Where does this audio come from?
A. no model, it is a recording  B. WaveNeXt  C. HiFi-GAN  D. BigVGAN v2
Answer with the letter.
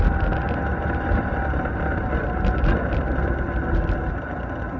A